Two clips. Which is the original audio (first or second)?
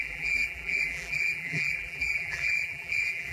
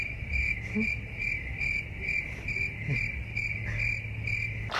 second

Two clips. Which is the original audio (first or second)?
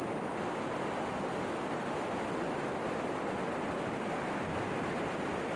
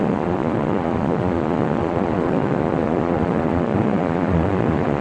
first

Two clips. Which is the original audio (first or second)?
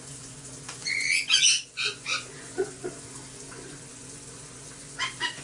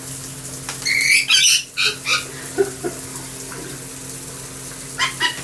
second